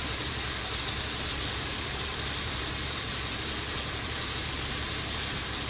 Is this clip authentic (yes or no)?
no